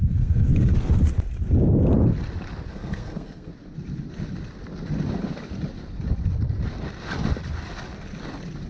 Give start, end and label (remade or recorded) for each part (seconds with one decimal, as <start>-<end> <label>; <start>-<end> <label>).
0.0-0.5 remade; 0.5-2.7 recorded; 2.7-3.5 remade; 3.5-8.7 recorded